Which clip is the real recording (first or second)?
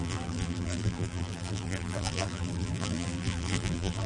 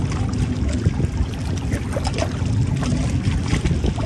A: second